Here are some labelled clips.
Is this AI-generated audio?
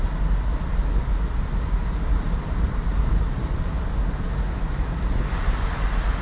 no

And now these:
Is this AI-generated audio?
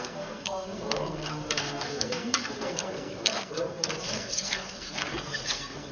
yes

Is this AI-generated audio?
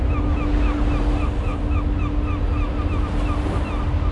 no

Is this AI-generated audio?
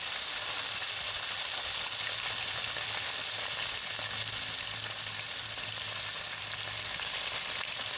no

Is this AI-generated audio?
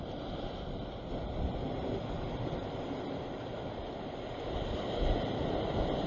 no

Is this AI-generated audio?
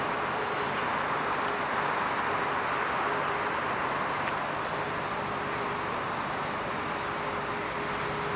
no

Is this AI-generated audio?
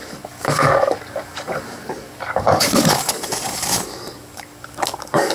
yes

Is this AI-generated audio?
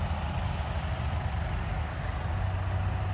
no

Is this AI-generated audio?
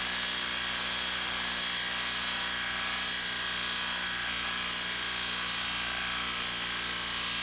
no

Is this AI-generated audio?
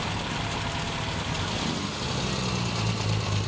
no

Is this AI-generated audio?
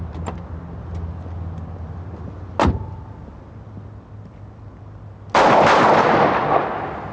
no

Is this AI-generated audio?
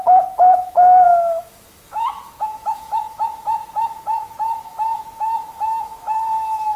yes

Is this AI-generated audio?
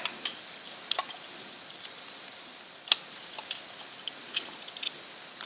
no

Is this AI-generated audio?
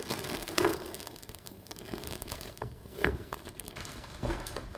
yes